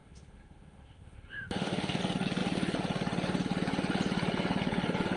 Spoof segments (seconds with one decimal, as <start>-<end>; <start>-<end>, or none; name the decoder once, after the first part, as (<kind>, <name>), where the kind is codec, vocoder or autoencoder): 0.0-2.0 (autoencoder, DAC-VAE)